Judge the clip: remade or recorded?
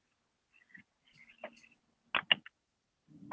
recorded